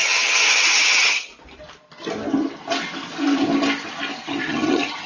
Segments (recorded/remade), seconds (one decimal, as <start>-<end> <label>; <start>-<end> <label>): 0.0-1.3 remade; 1.3-4.4 recorded; 4.4-5.1 remade